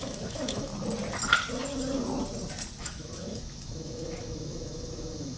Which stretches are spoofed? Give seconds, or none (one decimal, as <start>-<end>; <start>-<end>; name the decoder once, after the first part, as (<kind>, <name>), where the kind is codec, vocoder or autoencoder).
0.0-0.7 (autoencoder, DAC-VAE); 2.8-5.4